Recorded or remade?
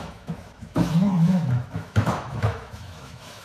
remade